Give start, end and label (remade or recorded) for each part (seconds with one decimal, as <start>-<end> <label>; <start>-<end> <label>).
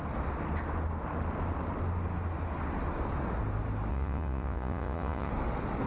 0.0-3.9 recorded; 3.9-5.3 remade; 5.3-5.9 recorded